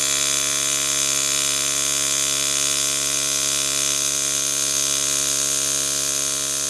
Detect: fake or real real